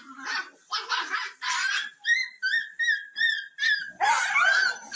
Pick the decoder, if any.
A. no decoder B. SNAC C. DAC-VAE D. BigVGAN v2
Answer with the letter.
A